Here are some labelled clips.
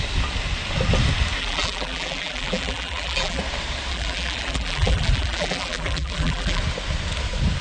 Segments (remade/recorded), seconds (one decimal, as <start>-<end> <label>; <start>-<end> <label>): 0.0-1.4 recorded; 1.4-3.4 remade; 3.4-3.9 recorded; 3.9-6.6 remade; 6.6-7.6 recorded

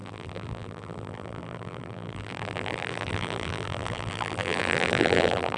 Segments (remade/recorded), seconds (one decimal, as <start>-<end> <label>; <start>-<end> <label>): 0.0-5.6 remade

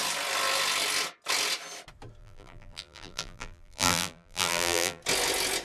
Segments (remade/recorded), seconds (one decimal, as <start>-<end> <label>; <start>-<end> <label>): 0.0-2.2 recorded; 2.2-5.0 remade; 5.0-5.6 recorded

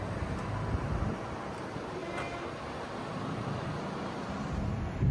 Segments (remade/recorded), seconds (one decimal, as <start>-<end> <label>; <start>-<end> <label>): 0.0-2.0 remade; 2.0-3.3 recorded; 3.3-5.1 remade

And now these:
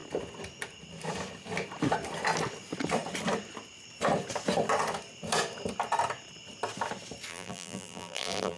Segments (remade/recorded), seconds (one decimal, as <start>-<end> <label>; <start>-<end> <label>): 0.0-7.3 recorded; 7.3-8.6 remade